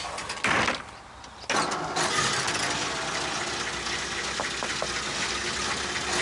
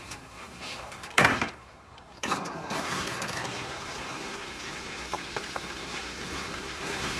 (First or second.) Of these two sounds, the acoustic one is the first